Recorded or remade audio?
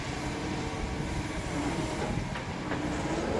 recorded